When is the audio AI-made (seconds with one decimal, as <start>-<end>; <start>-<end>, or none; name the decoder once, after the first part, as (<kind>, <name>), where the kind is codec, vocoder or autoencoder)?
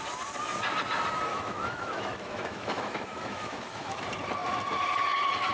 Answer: 1.3-4.0 (autoencoder, DAC-VAE)